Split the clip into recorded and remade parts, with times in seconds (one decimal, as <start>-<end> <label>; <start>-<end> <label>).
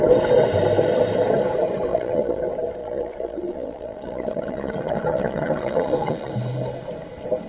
0.0-1.9 recorded; 1.9-2.4 remade; 2.4-2.8 recorded; 2.8-6.3 remade; 6.3-7.5 recorded